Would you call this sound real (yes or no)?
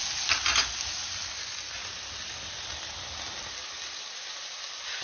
yes